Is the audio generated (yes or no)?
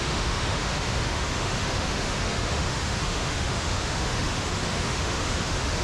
yes